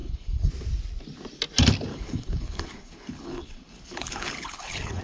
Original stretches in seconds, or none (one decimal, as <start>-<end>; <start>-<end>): 0.5-1.9